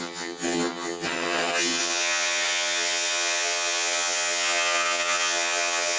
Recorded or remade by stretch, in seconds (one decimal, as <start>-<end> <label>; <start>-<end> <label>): 0.0-6.0 remade